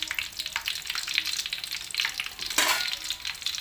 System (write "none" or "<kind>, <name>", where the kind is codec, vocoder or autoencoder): none